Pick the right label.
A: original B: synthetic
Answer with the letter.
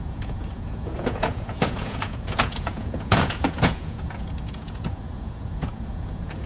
B